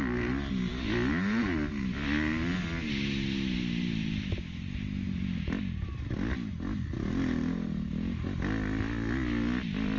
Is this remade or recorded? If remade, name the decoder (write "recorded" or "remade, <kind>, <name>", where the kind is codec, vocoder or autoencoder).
recorded